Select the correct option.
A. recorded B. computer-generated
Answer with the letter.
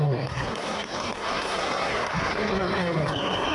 B